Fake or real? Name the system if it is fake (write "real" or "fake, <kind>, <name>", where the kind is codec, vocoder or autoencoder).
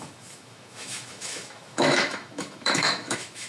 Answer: fake, autoencoder, DAC-VAE